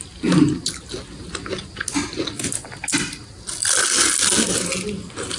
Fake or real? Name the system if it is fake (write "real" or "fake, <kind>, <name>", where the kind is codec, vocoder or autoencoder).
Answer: real